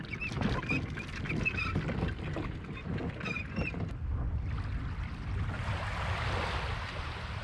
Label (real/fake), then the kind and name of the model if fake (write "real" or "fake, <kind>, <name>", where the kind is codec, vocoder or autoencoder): real